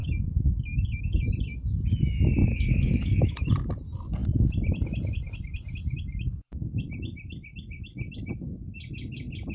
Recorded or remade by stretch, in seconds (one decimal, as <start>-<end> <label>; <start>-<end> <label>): 0.0-1.3 remade; 1.3-2.4 recorded; 2.4-3.3 remade; 3.3-9.5 recorded